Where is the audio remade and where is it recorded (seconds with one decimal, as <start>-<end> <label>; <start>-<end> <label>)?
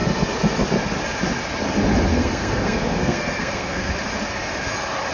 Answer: 0.0-2.1 recorded; 2.1-3.9 remade; 3.9-5.1 recorded